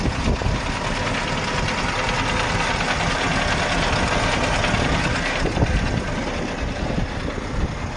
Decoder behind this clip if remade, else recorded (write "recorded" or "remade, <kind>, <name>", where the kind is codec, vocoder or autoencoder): recorded